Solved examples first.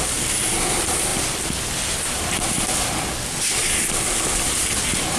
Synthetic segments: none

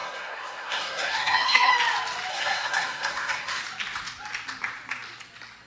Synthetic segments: 0.0-1.7 (codec, SNAC); 2.3-3.6

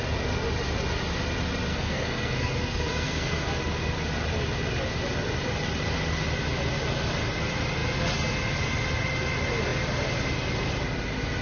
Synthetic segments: 1.7-3.4 (codec, SNAC)